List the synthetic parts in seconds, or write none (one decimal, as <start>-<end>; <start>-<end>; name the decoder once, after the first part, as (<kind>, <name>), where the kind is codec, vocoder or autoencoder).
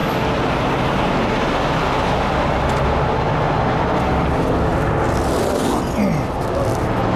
none